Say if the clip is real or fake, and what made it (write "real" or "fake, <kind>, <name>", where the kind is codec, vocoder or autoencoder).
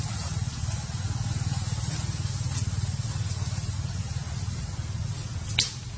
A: real